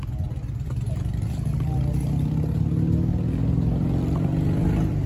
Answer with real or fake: real